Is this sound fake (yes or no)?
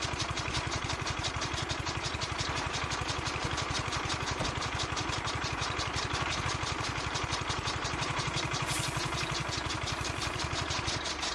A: yes